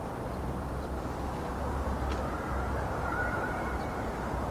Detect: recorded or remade remade